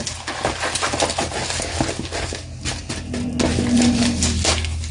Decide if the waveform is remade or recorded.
recorded